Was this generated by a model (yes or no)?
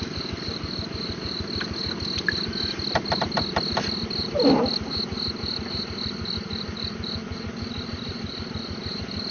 no